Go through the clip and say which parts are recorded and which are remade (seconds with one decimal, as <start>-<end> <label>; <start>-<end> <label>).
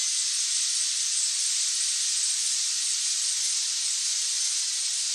0.0-5.1 recorded